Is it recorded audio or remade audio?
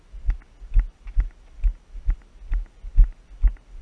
recorded